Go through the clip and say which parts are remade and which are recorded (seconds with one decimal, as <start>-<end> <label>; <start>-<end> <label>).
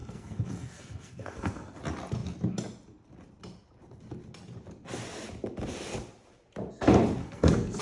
0.0-1.8 remade; 1.8-7.2 recorded; 7.2-7.8 remade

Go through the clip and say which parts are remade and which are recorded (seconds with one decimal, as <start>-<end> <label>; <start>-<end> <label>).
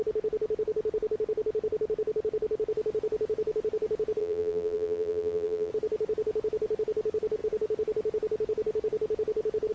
0.0-4.2 recorded; 4.2-5.7 remade; 5.7-9.7 recorded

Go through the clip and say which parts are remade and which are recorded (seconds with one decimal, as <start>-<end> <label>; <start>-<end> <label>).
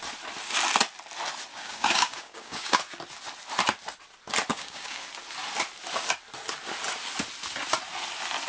0.0-1.5 recorded; 1.5-2.8 remade; 2.8-4.5 recorded; 4.5-5.1 remade; 5.1-8.5 recorded